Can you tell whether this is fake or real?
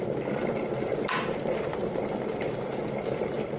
real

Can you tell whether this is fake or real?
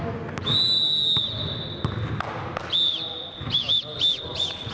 real